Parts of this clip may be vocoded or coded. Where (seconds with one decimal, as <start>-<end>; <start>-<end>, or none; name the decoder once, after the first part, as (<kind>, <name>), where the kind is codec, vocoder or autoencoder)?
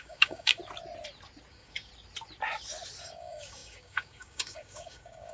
0.0-0.6 (codec, DAC); 1.5-1.9; 3.0-5.3